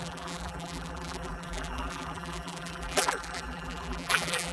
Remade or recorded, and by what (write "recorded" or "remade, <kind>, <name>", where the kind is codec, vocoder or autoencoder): remade, vocoder, BigVGAN v2